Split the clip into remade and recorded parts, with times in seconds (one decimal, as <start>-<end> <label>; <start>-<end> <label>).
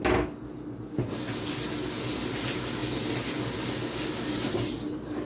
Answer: 0.0-5.3 recorded